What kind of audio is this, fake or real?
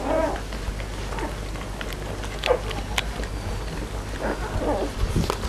real